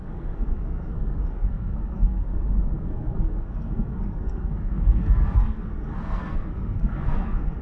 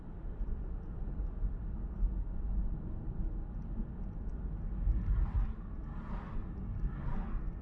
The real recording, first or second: second